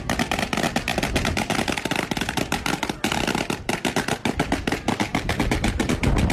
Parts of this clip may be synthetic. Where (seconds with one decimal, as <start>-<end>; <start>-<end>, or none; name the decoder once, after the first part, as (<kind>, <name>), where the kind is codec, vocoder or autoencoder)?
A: none